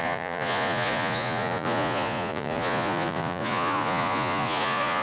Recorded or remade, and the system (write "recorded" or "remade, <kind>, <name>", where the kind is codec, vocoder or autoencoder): remade, vocoder, Vocos